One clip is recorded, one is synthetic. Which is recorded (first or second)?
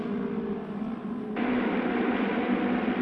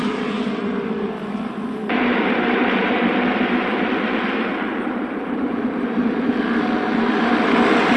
first